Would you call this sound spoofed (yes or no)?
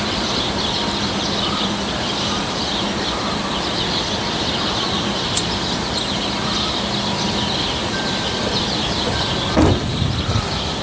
yes